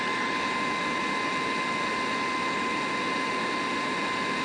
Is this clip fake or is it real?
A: real